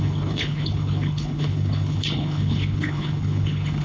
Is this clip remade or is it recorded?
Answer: remade